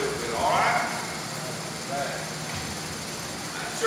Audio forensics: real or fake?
real